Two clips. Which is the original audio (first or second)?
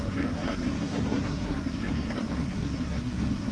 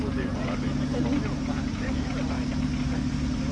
second